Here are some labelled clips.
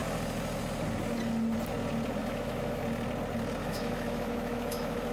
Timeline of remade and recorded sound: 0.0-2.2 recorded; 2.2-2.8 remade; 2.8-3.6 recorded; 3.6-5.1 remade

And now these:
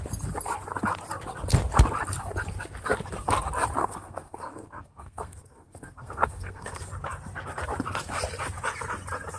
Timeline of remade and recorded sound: 0.0-3.8 recorded; 3.8-6.8 remade; 6.8-9.4 recorded

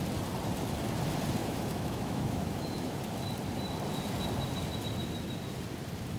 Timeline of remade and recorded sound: 0.0-1.4 recorded; 1.4-3.0 remade; 3.0-6.2 recorded